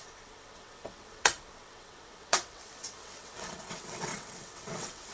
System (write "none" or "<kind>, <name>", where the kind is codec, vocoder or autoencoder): vocoder, WaveNeXt